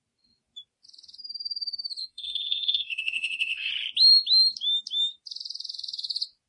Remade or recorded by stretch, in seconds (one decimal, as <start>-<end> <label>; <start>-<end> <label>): 0.0-2.0 recorded; 2.0-3.7 remade; 3.7-6.5 recorded